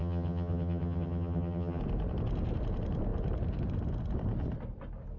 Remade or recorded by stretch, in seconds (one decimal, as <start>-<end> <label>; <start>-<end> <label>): 0.0-1.8 remade; 1.8-5.2 recorded